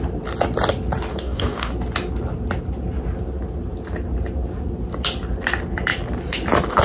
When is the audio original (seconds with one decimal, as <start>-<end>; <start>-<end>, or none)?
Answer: 0.0-1.1; 1.7-6.8